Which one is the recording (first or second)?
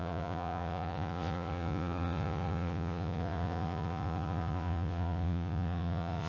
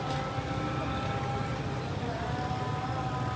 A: second